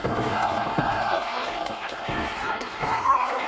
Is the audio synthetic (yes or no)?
yes